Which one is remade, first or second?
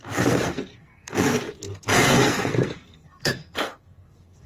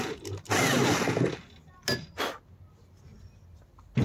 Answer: first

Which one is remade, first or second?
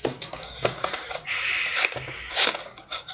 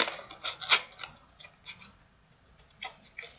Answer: first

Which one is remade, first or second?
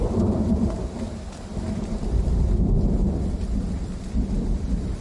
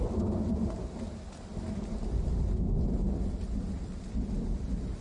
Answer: first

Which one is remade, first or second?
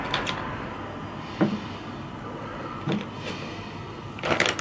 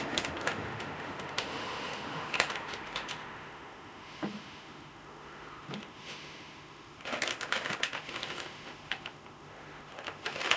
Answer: second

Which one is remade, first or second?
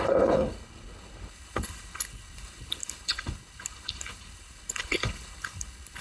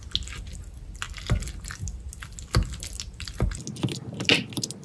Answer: first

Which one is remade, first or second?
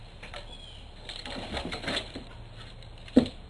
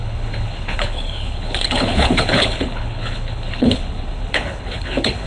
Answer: second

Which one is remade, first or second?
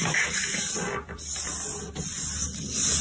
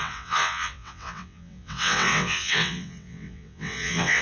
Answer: second